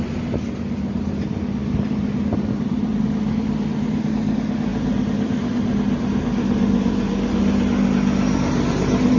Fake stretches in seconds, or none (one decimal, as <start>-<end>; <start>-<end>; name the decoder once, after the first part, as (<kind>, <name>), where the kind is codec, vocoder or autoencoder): none